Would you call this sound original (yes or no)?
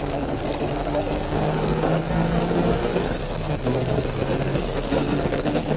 no